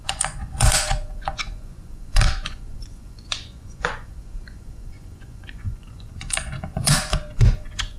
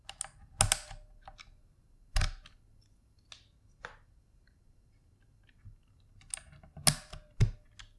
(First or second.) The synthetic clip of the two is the first